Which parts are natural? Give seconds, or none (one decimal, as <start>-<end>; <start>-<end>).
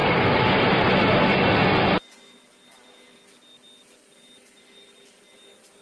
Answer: 0.0-5.8